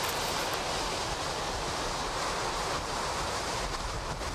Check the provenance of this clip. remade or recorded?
recorded